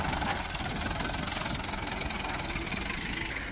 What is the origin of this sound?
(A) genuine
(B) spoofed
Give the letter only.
A